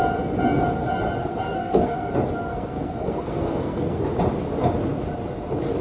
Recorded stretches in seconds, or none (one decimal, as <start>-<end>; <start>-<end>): 0.0-1.2; 2.1-2.5; 4.0-5.8